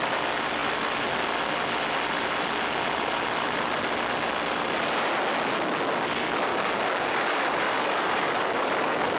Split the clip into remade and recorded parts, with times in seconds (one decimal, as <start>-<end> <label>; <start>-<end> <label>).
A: 0.0-6.5 recorded; 6.5-9.2 remade